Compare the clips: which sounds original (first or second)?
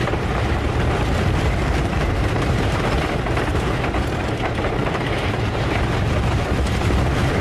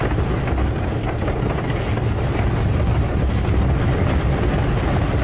second